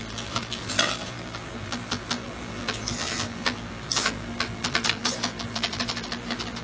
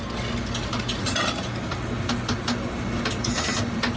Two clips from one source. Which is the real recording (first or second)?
second